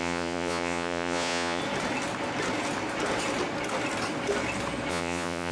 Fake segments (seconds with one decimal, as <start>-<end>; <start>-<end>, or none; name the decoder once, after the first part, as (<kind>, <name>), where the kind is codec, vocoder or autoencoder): 0.0-1.6 (vocoder, Vocos); 4.9-5.5